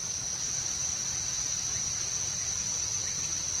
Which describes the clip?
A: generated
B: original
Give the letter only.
B